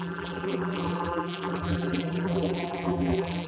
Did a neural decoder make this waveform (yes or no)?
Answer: yes